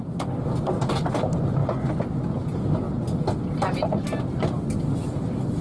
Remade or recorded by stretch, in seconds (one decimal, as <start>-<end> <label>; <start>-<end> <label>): 0.0-5.6 recorded